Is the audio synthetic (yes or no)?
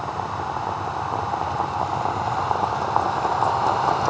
no